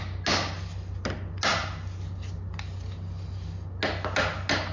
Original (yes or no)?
yes